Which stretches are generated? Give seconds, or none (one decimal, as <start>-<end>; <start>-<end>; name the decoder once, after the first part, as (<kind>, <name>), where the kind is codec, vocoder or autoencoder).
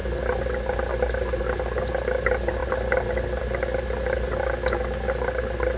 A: none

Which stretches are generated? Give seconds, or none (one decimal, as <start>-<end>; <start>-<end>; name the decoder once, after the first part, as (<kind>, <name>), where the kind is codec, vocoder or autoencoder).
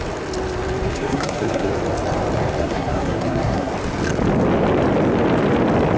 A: 0.9-1.7 (codec, SNAC); 2.6-3.7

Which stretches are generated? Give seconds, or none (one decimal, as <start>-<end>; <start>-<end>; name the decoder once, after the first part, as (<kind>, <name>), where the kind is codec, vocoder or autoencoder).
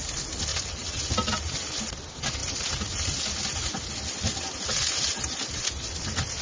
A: 0.5-1.0 (vocoder, WaveNeXt)